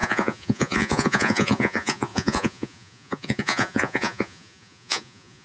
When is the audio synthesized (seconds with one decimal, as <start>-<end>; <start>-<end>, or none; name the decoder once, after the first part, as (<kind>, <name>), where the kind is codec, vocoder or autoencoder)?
0.0-5.4 (vocoder, Vocos)